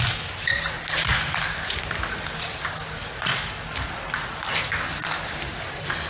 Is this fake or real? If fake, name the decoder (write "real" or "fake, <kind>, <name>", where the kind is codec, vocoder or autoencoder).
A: real